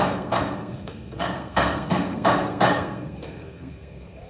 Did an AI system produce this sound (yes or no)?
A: yes